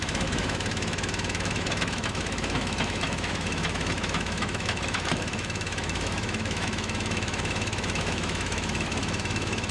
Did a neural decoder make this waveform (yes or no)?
yes